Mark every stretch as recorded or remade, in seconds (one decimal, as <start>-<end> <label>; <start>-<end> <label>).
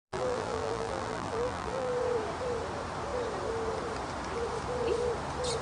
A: 0.0-1.9 remade; 1.9-5.6 recorded